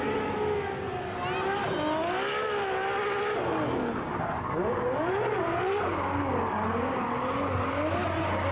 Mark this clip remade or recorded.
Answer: recorded